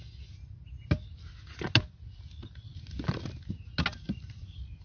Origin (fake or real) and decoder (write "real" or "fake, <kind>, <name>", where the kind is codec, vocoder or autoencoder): real